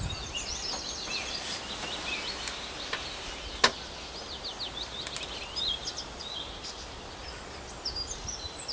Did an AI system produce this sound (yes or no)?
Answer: no